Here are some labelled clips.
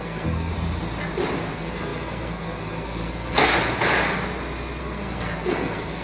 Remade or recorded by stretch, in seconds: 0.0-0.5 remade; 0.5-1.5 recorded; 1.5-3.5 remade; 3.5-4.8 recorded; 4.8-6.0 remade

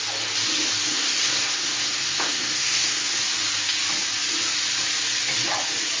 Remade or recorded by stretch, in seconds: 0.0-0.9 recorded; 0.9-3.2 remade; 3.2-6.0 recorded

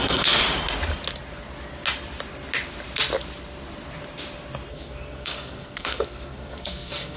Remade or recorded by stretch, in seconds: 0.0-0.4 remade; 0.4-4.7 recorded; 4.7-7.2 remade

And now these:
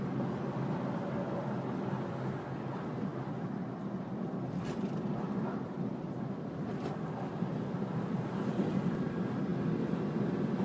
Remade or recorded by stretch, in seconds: 0.0-10.6 recorded

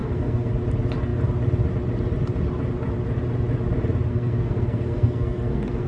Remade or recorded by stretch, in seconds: 0.0-0.5 remade; 0.5-4.1 recorded; 4.1-5.9 remade